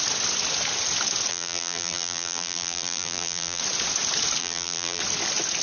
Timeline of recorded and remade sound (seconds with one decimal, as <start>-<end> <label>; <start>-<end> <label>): 0.0-1.3 recorded; 1.3-3.6 remade; 3.6-4.4 recorded; 4.4-5.0 remade; 5.0-5.6 recorded